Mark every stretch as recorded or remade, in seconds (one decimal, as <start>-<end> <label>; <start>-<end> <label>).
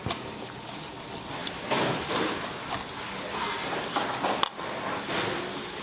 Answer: 0.0-5.8 recorded